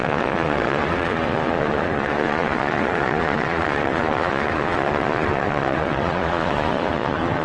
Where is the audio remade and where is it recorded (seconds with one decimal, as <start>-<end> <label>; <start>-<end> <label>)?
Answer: 0.0-7.4 remade